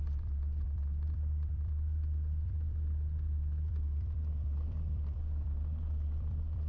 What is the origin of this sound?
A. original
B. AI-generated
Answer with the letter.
B